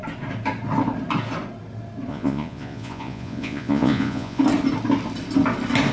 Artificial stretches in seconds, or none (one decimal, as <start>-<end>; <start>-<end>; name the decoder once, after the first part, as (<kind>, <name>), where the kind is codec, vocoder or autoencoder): 2.1-4.4 (vocoder, Vocos)